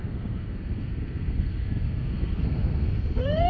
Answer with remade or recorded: remade